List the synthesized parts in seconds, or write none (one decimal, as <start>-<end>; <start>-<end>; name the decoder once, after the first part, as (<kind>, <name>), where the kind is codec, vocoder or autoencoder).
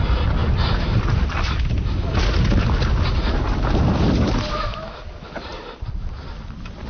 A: 5.5-6.3 (vocoder, BigVGAN v2)